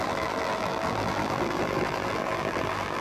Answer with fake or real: fake